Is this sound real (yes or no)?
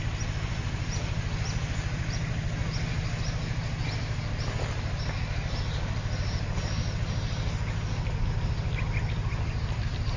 yes